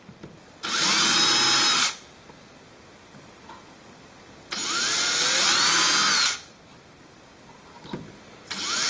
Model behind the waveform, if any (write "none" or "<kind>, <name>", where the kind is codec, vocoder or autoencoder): none